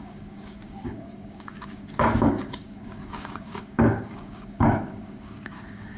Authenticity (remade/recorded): remade